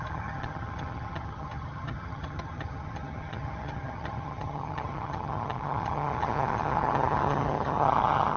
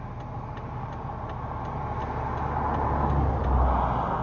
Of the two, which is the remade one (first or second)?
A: first